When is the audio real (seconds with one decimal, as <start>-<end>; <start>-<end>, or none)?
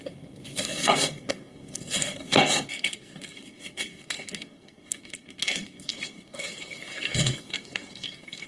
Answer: none